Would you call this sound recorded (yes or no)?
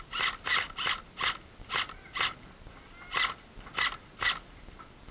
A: yes